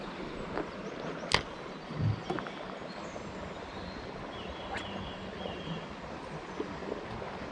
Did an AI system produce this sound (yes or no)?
no